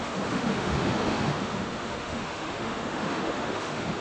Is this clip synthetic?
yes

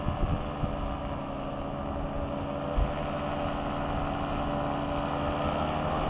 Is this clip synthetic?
no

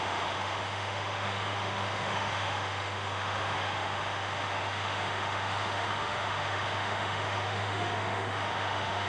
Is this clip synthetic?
yes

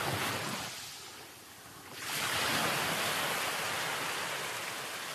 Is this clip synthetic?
no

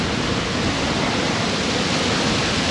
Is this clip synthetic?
no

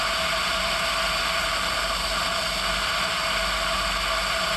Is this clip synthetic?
no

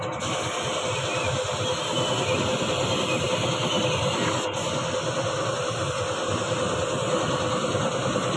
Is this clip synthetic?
no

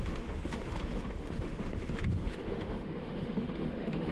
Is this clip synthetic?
yes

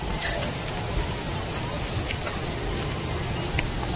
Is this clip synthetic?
no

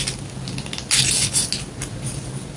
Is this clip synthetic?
no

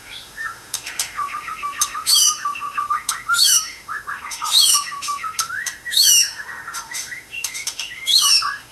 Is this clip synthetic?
yes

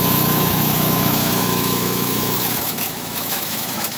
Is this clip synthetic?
yes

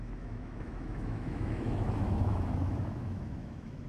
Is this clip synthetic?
yes